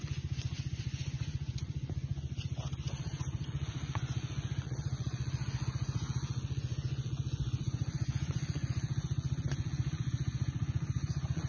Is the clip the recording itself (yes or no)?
no